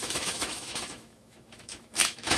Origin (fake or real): fake